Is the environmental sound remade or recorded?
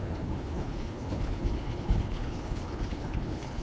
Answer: remade